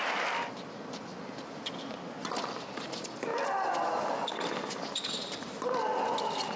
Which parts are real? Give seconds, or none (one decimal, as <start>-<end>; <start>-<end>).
0.0-6.6